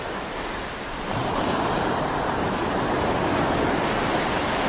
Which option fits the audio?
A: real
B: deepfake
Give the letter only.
B